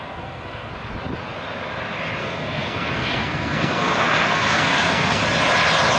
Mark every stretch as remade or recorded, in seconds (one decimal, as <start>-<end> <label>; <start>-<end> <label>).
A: 0.0-0.7 remade; 0.7-2.2 recorded; 2.2-5.2 remade; 5.2-6.0 recorded